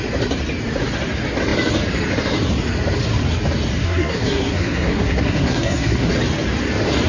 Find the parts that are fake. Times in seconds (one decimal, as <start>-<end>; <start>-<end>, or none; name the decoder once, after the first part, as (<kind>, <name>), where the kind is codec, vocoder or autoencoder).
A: 3.8-6.1 (codec, SNAC)